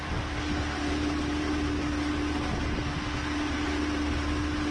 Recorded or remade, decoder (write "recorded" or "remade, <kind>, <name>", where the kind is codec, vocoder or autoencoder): recorded